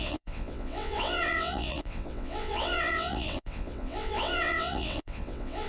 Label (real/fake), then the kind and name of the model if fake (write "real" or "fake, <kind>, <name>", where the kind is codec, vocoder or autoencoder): fake, vocoder, WaveNeXt